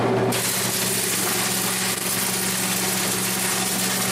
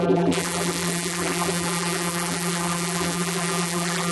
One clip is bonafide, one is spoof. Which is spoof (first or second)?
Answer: second